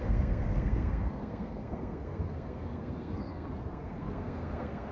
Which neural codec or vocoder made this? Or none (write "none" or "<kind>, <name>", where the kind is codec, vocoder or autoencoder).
codec, SNAC